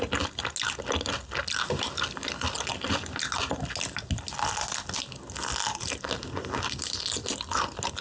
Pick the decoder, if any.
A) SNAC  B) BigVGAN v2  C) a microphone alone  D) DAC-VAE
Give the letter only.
C